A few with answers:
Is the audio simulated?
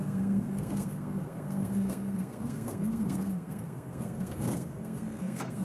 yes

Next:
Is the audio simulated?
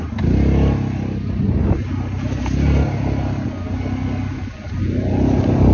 no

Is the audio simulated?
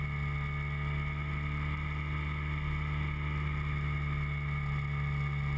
no